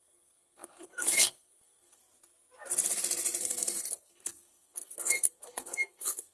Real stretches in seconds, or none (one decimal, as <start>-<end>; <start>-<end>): 2.0-3.4

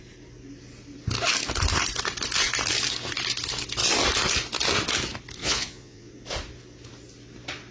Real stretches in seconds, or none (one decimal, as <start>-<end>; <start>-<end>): 0.0-5.4; 6.1-7.7

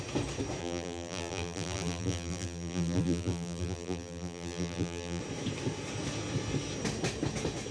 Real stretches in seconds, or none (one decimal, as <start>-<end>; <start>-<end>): 0.0-0.6; 5.2-7.7

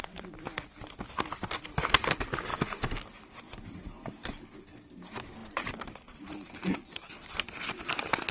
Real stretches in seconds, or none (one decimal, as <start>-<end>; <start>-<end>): 0.6-5.4; 7.1-8.3

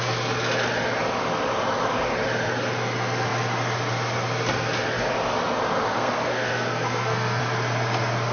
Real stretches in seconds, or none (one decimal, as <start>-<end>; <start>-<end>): 0.0-5.9; 7.4-8.3

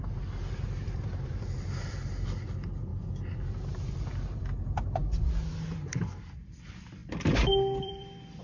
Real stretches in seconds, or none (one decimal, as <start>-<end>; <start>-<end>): 2.9-3.7; 7.0-7.8

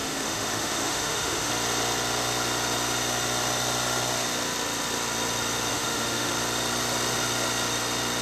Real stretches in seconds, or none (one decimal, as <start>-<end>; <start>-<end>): 1.5-5.7; 6.3-8.2

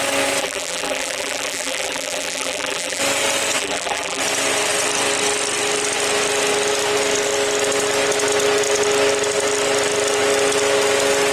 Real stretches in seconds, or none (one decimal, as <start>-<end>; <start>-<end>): 0.0-0.4; 3.0-3.6; 4.2-11.3